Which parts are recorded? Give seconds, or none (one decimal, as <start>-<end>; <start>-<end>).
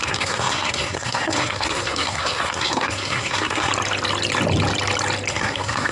3.7-5.3